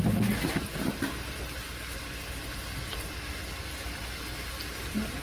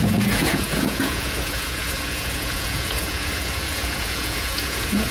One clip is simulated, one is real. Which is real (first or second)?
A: first